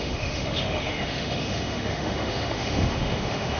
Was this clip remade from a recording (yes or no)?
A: yes